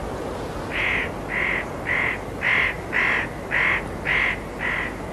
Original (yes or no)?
yes